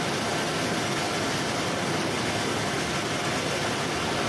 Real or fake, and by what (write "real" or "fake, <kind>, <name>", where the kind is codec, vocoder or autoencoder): real